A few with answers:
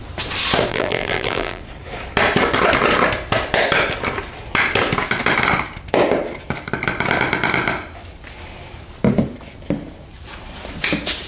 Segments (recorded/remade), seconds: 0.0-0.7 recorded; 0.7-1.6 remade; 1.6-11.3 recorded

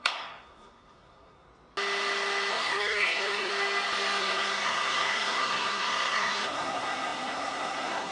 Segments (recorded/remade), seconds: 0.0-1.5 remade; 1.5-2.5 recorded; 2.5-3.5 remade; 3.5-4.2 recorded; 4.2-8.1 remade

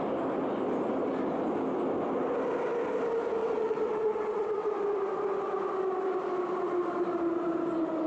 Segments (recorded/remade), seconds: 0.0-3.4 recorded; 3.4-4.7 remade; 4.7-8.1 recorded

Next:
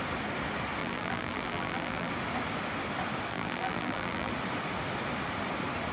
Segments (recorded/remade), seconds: 0.0-0.8 recorded; 0.8-2.1 remade; 2.1-3.3 recorded; 3.3-4.3 remade; 4.3-5.9 recorded

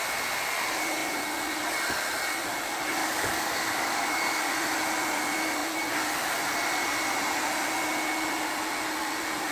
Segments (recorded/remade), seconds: 0.0-3.0 recorded; 3.0-4.5 remade; 4.5-9.5 recorded